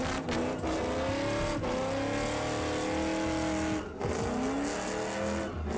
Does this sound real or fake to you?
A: real